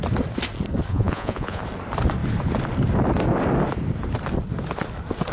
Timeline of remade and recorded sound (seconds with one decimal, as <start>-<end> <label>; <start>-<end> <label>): 0.0-0.9 recorded; 0.9-1.6 remade; 1.6-5.3 recorded